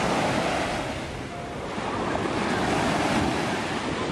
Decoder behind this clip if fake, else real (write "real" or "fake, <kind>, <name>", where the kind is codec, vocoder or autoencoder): real